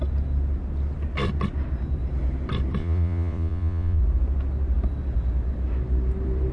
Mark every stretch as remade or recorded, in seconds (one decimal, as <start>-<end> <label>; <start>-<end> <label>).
0.0-2.8 recorded; 2.8-4.0 remade; 4.0-6.5 recorded